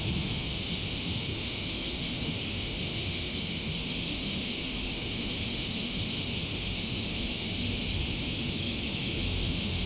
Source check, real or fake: fake